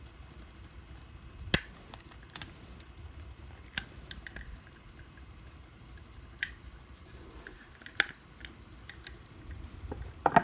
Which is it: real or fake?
real